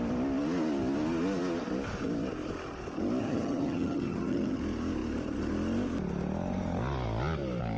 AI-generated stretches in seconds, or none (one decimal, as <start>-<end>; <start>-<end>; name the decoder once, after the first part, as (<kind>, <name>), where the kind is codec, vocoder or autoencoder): 3.2-4.6 (vocoder, HiFi-GAN)